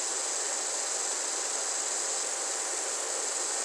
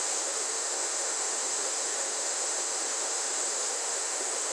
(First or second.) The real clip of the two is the first